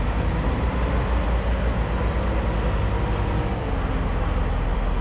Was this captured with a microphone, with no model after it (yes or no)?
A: yes